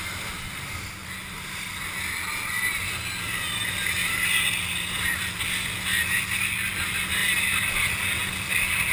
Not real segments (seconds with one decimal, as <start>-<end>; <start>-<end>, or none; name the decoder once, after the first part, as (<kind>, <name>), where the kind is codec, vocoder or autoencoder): none